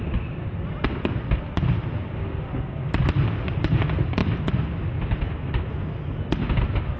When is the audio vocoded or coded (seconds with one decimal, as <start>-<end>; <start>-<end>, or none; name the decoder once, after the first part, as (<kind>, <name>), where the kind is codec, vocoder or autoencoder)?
none